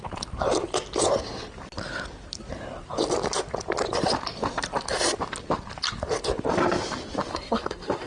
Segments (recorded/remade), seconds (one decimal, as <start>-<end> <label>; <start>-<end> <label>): 0.0-7.3 recorded; 7.3-8.1 remade